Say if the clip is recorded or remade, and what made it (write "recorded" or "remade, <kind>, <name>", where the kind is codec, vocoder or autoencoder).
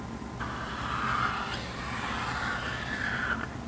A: recorded